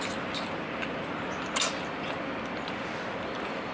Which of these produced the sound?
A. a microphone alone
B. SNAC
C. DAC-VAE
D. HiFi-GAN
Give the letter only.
A